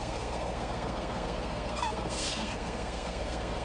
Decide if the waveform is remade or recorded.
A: remade